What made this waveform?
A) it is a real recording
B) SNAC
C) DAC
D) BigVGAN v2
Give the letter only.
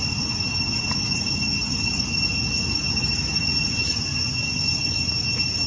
A